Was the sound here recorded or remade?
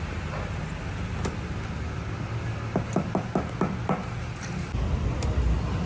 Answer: recorded